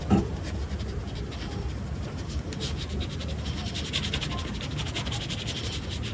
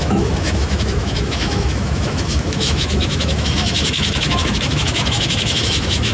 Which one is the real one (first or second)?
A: first